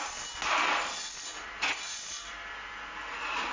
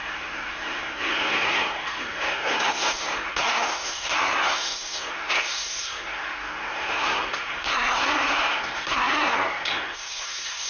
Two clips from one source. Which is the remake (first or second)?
second